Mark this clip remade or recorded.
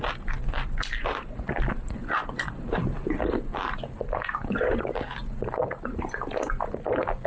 recorded